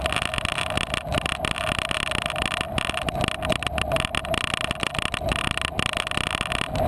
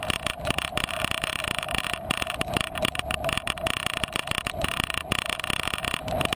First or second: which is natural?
first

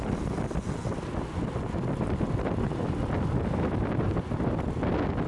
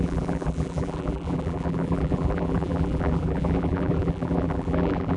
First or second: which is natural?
first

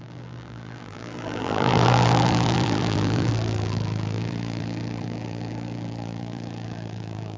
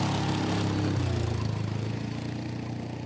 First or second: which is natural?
second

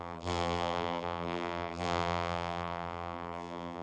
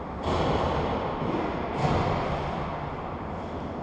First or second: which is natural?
second